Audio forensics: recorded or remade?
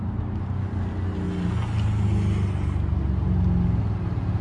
recorded